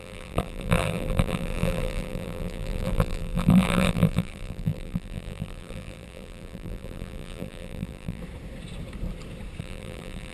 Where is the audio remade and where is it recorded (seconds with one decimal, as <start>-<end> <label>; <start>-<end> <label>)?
0.0-8.2 remade; 8.2-9.6 recorded; 9.6-10.3 remade